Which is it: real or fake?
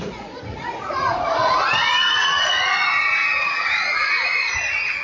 fake